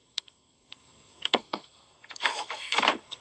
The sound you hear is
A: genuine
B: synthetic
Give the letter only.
B